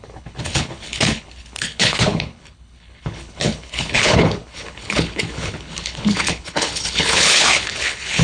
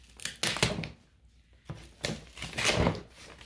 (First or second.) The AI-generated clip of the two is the first